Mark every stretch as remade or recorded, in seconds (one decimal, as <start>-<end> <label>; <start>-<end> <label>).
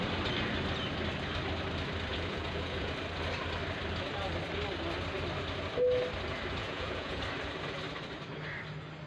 0.0-2.1 recorded; 2.1-2.9 remade; 2.9-6.6 recorded; 6.6-7.2 remade; 7.2-9.1 recorded